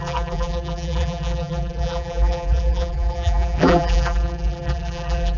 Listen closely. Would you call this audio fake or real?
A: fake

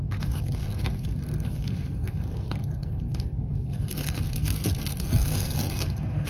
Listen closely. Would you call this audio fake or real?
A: fake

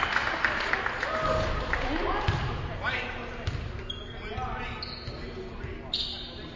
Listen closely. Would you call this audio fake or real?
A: real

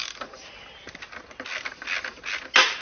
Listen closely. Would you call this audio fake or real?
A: real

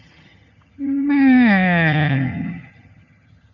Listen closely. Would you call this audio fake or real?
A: fake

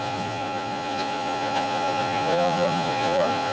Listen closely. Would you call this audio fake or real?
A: fake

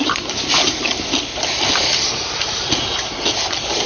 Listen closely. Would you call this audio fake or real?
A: real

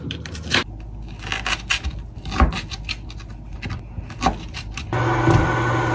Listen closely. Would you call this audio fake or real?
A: real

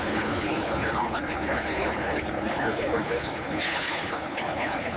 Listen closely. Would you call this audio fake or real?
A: fake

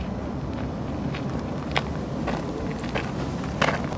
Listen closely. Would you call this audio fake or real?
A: real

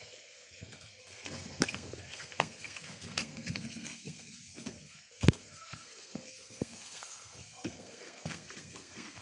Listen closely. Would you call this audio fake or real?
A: fake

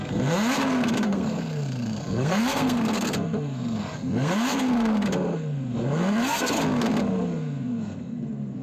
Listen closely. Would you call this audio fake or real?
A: fake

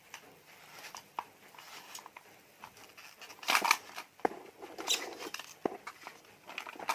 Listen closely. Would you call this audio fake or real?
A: real